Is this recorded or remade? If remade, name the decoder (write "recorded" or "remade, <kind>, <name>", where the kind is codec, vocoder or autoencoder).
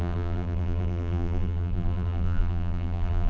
remade, vocoder, BigVGAN v2